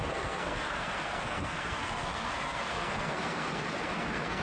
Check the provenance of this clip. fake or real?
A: fake